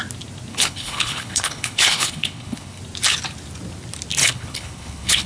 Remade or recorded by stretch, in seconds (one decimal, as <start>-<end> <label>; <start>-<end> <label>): 0.0-0.5 recorded; 0.5-2.8 remade; 2.8-4.2 recorded; 4.2-5.3 remade